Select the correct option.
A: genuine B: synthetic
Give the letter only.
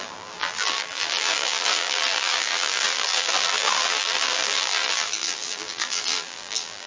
B